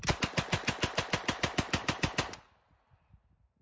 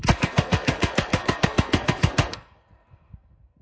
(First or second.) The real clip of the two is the first